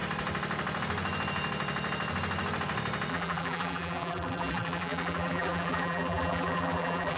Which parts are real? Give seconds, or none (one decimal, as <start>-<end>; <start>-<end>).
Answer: 0.0-3.1